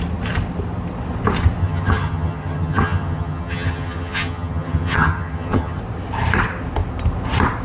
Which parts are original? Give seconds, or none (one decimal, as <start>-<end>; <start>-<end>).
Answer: 0.0-1.6; 5.8-7.6